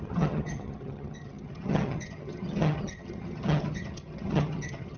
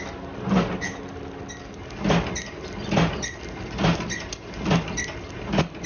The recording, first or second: second